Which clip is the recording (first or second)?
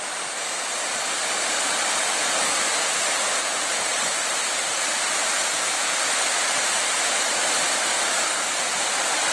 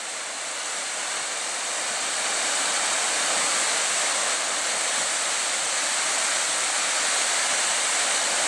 second